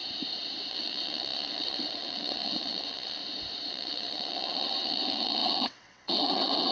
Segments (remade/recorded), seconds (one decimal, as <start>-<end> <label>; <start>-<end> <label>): 0.0-0.7 recorded; 0.7-3.2 remade; 3.2-3.7 recorded; 3.7-6.7 remade